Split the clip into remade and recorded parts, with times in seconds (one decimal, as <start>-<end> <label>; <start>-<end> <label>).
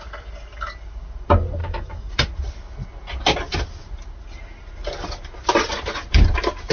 0.0-1.6 recorded; 1.6-2.1 remade; 2.1-6.7 recorded